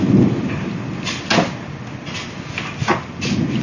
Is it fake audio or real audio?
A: real